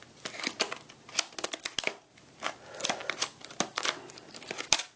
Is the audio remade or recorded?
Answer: recorded